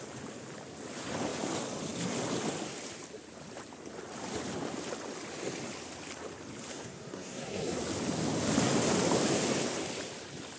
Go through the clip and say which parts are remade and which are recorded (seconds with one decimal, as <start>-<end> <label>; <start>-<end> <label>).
0.0-6.7 recorded; 6.7-7.8 remade; 7.8-10.6 recorded